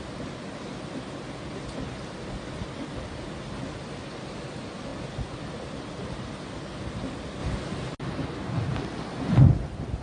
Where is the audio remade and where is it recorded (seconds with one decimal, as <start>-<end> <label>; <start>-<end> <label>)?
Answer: 0.0-10.0 recorded